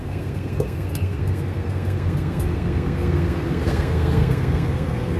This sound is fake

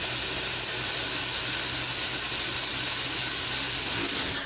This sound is real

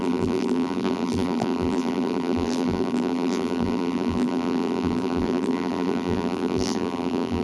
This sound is fake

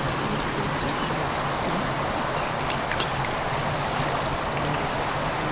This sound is real